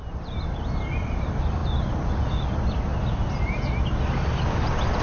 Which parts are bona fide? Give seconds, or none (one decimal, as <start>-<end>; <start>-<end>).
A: 0.0-5.0